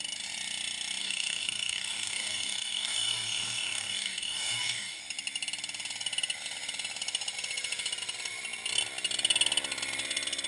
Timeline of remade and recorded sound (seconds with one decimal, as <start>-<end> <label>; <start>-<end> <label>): 0.0-1.0 recorded; 1.0-5.0 remade; 5.0-10.5 recorded

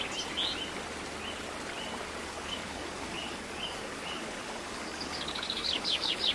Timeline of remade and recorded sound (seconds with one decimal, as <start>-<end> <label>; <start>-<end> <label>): 0.0-2.2 recorded; 2.2-6.3 remade